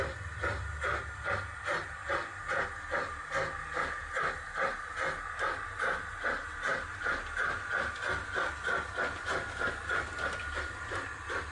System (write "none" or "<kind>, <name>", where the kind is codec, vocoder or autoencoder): none